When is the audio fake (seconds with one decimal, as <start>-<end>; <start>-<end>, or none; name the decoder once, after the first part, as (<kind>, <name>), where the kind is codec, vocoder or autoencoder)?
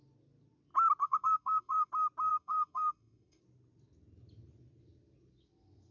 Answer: 1.0-1.9 (codec, SNAC); 2.3-3.4